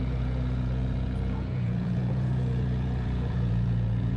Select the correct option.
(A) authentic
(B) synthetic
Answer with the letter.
B